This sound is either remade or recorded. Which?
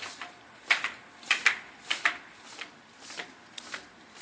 remade